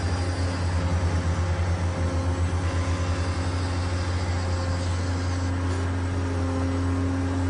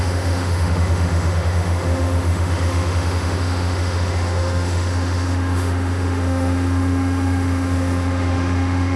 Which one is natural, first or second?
first